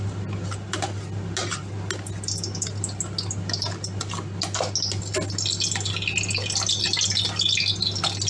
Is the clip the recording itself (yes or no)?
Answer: yes